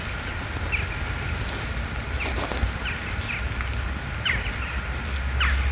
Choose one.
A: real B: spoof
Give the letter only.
A